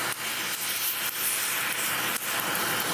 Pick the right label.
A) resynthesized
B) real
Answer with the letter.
B